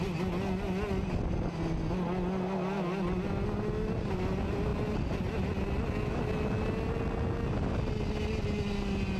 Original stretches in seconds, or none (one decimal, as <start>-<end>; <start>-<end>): 0.0-9.2